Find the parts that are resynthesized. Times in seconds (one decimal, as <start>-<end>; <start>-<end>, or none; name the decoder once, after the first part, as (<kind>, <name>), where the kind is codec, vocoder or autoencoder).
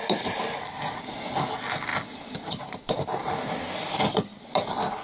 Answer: none